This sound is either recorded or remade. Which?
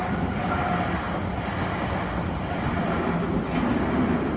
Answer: recorded